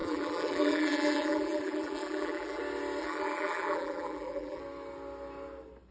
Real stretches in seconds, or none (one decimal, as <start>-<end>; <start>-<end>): 2.6-3.0; 4.6-5.9